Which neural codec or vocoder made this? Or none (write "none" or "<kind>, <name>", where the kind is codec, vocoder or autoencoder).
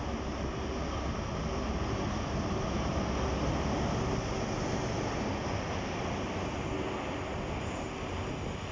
none